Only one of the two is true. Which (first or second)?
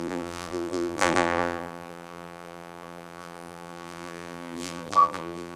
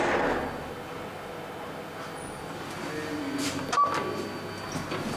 second